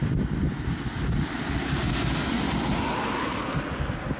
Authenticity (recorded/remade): recorded